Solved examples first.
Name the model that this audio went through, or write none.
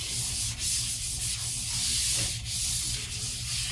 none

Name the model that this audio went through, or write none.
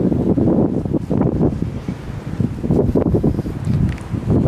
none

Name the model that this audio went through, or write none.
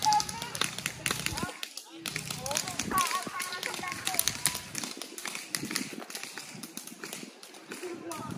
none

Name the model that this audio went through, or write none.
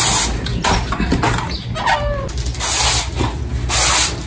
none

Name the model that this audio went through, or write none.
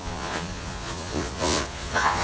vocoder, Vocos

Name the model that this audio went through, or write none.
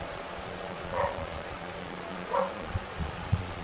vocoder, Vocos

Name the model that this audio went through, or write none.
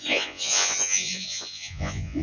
vocoder, Vocos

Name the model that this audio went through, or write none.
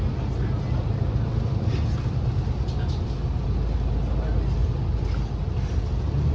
none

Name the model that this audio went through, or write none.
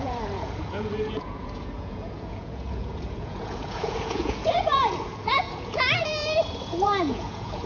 vocoder, Vocos